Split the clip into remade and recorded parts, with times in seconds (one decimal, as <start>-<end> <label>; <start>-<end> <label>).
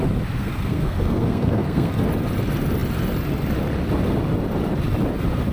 0.0-0.4 recorded; 0.4-1.9 remade; 1.9-5.5 recorded